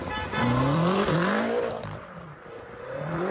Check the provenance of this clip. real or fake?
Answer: fake